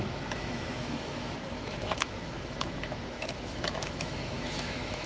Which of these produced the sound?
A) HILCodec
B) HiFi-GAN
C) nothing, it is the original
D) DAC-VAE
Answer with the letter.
D